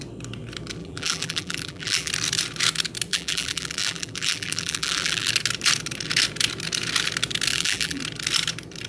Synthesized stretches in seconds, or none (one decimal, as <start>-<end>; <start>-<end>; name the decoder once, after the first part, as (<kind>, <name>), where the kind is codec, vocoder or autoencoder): 0.8-2.1 (vocoder, BigVGAN v2); 3.1-5.3; 7.5-8.0